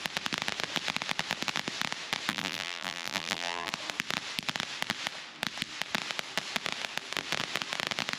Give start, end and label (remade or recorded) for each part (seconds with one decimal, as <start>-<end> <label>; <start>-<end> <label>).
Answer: 0.0-2.3 recorded; 2.3-3.7 remade; 3.7-8.2 recorded